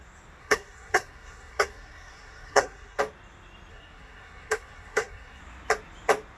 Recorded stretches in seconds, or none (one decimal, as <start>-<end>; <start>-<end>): 0.0-0.4; 3.0-3.7; 5.4-6.4